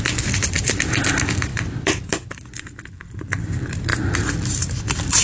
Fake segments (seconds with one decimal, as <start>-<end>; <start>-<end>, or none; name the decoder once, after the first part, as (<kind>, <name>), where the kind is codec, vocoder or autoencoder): 1.5-3.4 (vocoder, BigVGAN v2); 3.9-4.7